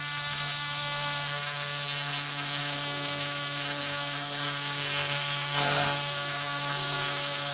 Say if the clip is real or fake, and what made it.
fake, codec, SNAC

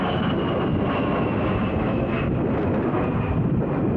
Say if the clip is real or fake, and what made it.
real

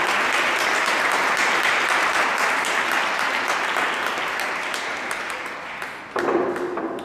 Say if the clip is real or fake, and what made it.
real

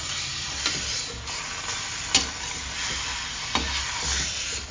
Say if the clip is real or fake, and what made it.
real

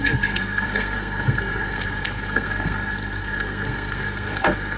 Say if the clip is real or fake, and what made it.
fake, codec, SNAC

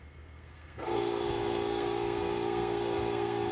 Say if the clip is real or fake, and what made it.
fake, codec, SNAC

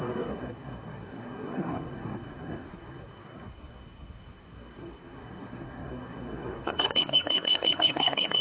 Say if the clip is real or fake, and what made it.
fake, codec, SNAC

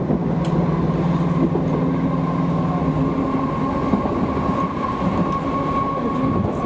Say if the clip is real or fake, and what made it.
real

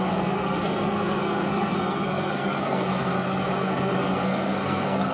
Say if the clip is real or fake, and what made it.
fake, codec, SNAC